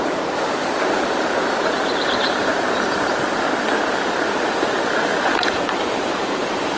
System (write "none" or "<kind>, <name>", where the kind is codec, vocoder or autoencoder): vocoder, BigVGAN v2